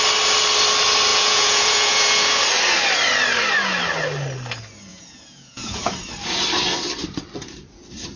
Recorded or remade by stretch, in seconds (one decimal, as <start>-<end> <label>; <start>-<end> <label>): 0.0-1.1 recorded; 1.1-2.4 remade; 2.4-4.9 recorded; 4.9-5.8 remade; 5.8-8.2 recorded